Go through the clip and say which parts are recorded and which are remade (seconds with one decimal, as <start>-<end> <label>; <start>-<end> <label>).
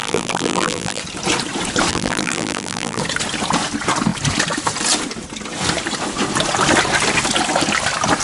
0.0-1.0 remade; 1.0-1.9 recorded; 1.9-3.0 remade; 3.0-8.2 recorded